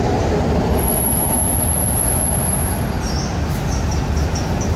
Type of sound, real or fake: real